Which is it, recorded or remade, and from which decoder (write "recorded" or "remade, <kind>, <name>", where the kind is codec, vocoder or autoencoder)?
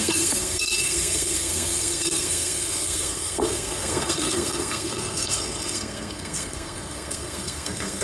remade, codec, SNAC